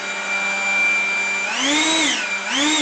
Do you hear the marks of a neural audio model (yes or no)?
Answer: no